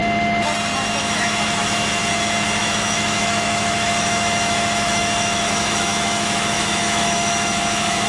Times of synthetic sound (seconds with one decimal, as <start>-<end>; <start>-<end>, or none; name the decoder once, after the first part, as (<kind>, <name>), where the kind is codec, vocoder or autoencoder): 1.0-2.0 (autoencoder, DAC-VAE); 2.6-8.1

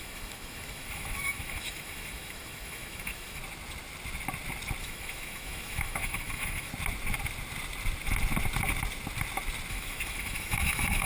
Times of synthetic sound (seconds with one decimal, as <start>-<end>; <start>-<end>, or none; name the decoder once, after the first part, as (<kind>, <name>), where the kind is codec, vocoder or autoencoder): 0.0-3.4 (autoencoder, DAC-VAE); 4.8-6.7; 9.7-11.1

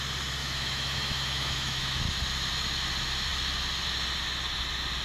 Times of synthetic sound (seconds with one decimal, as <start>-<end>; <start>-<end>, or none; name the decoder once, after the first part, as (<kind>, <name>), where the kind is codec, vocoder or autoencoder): 0.4-2.0 (autoencoder, DAC-VAE)

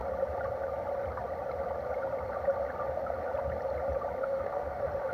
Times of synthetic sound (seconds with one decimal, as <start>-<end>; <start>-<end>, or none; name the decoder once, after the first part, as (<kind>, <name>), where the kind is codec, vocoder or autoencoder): 4.2-5.1 (autoencoder, DAC-VAE)